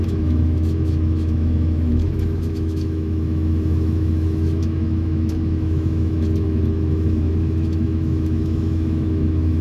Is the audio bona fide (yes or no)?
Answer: no